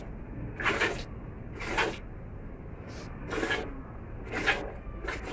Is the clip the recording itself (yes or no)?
yes